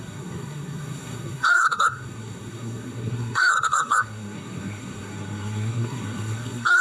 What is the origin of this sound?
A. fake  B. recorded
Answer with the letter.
A